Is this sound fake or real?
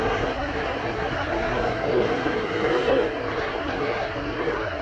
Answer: fake